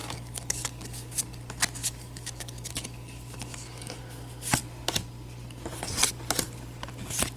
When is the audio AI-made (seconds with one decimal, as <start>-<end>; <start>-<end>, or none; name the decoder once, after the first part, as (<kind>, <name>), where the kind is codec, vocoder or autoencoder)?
0.0-1.2 (codec, DAC); 1.8-4.0